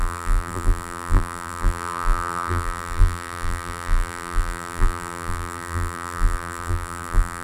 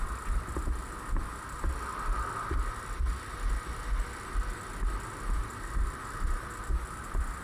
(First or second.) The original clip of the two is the second